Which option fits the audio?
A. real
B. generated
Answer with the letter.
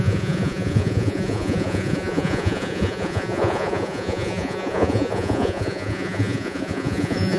B